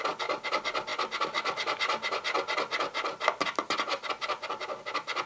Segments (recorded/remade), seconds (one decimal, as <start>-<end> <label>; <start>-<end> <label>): 0.0-5.3 recorded